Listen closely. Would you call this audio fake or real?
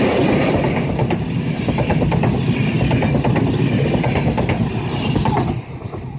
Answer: real